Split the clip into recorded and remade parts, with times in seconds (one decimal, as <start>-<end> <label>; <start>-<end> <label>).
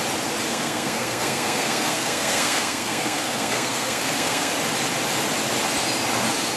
0.0-0.5 recorded; 0.5-4.5 remade; 4.5-6.6 recorded